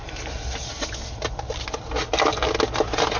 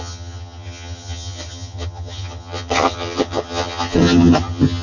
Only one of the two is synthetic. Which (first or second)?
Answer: second